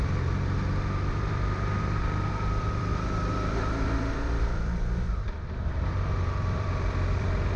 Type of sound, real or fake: fake